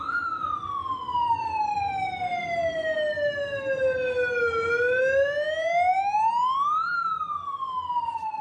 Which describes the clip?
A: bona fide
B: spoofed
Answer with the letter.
A